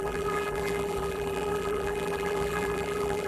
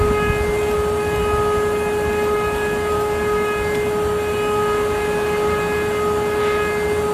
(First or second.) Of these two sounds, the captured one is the second